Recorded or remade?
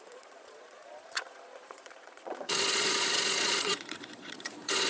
remade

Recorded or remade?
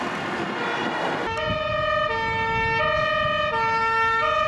recorded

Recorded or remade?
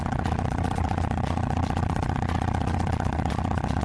remade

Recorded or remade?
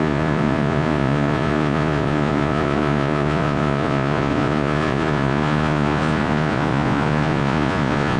remade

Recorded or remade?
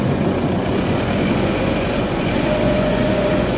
remade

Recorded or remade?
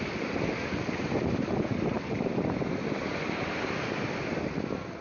recorded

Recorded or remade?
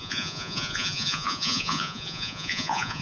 remade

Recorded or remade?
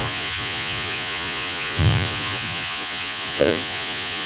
remade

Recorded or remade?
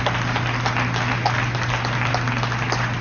recorded